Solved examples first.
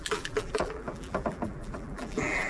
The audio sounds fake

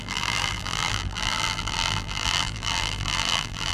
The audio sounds fake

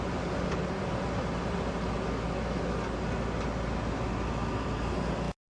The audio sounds real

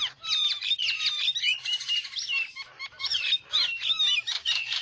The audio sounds fake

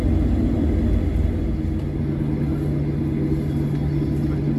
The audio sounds real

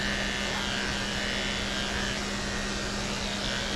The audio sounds real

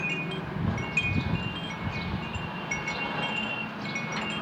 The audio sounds real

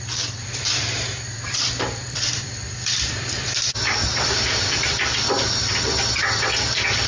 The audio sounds fake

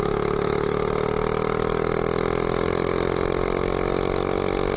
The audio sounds real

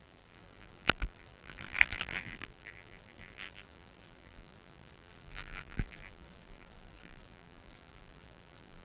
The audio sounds fake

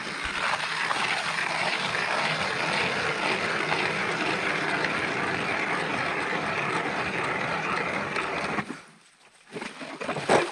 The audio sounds real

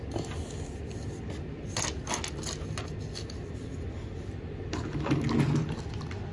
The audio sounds real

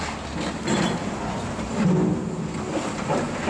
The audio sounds fake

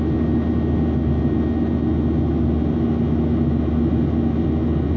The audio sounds real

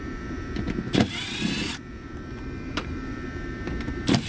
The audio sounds fake